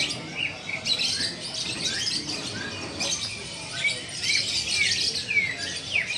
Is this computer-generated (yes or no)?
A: no